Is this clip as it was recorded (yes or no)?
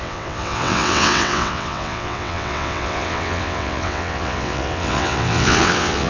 no